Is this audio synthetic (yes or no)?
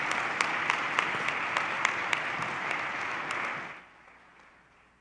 no